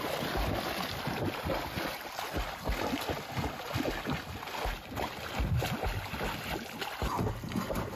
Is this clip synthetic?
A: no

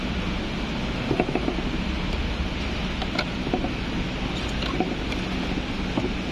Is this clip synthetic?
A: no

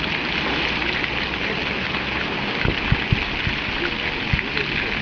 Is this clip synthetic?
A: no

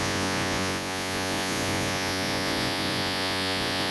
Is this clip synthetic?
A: yes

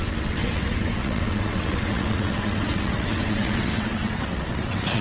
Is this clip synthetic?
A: yes